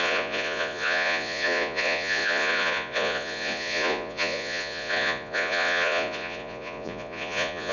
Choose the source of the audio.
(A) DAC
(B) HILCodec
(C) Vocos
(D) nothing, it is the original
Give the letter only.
C